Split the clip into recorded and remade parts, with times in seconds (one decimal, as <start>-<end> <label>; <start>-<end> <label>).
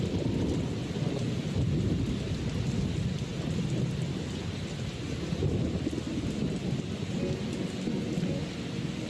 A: 0.0-9.1 recorded